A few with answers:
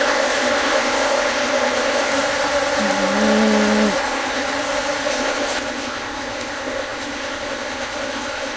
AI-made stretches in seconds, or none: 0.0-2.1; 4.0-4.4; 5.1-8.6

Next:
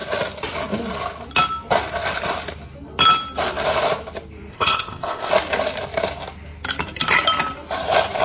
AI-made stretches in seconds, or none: 4.5-5.3

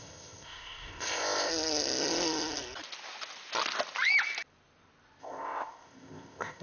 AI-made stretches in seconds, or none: 0.0-1.5; 5.2-6.6

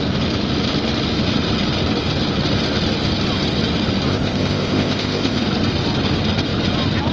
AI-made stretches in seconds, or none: 4.1-5.4

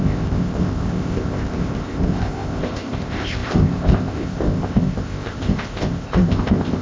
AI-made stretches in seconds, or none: 0.0-6.8